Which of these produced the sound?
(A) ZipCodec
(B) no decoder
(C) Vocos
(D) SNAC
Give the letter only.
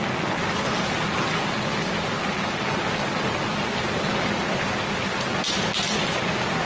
B